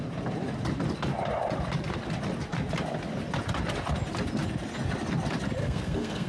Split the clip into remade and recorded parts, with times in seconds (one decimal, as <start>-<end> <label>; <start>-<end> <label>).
0.0-5.6 recorded; 5.6-6.3 remade